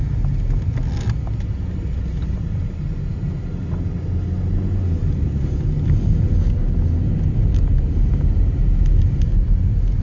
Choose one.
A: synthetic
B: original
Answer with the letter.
B